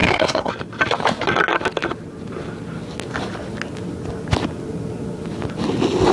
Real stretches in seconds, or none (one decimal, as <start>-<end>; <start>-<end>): 0.5-6.1